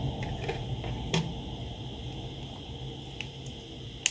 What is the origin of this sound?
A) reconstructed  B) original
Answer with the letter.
B